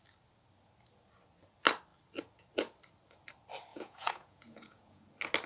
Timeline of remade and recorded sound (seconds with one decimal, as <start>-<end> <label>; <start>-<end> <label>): 0.0-3.7 recorded; 3.7-5.0 remade; 5.0-5.5 recorded